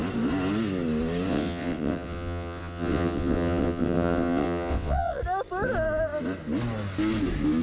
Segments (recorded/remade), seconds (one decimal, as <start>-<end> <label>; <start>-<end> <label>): 0.0-1.3 recorded; 1.3-5.2 remade; 5.2-7.6 recorded